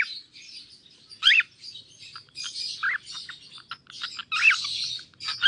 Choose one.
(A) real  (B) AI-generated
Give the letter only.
A